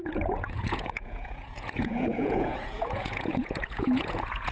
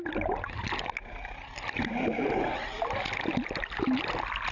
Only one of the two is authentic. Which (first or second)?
second